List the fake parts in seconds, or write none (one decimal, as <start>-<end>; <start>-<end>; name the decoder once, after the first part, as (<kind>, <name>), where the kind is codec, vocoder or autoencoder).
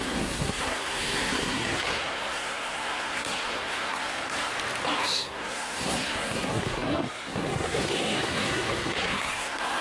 0.0-4.5 (codec, SNAC); 5.0-9.8